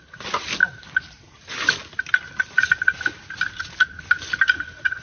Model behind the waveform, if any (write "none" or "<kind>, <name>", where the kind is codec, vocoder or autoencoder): none